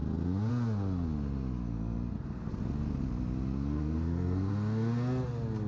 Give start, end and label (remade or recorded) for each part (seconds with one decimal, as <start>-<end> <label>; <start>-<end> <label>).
0.0-3.8 recorded; 3.8-4.5 remade; 4.5-5.7 recorded